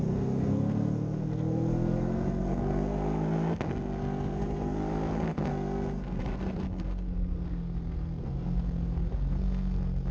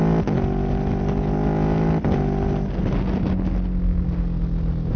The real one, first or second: second